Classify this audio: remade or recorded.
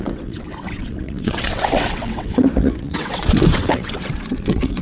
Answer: remade